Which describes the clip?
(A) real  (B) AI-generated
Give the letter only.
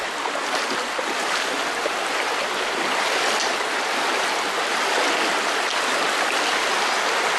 A